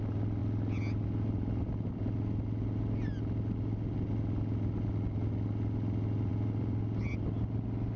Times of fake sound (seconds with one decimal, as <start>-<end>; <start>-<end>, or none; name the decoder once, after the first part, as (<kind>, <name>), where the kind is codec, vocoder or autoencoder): none